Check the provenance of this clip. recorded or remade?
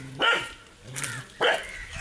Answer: recorded